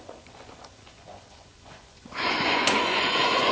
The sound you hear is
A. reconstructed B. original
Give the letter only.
A